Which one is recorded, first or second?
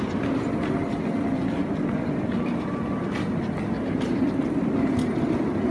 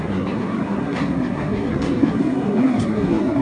first